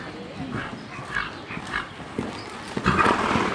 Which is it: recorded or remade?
recorded